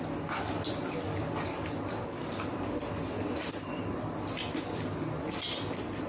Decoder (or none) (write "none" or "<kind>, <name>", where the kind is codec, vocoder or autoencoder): none